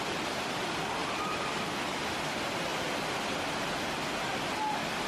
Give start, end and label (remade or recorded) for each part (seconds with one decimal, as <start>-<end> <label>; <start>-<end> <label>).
0.0-1.0 recorded; 1.0-1.8 remade; 1.8-5.1 recorded